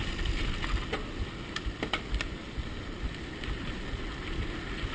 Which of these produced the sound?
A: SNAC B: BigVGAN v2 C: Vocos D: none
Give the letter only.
D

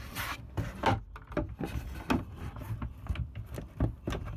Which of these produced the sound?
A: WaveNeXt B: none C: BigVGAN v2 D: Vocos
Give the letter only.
B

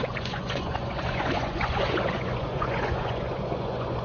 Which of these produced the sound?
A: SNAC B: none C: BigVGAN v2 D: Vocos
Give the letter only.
D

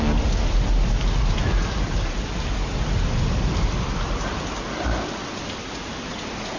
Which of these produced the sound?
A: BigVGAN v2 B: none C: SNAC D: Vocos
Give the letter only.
B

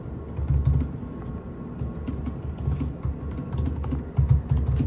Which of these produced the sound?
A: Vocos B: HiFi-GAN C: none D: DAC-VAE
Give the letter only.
C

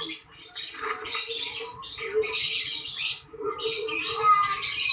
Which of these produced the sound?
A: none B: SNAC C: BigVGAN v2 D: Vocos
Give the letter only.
A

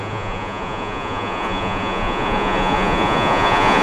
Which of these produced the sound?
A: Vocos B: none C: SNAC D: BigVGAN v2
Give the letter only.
A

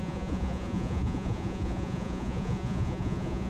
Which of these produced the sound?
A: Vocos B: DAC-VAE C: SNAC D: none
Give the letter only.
A